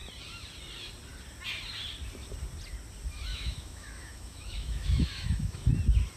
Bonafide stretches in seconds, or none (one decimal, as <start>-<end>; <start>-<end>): 0.0-3.3; 5.7-6.2